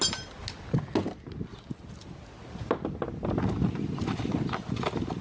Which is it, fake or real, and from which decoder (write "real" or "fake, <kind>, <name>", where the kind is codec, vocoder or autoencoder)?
real